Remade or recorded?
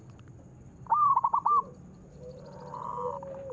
recorded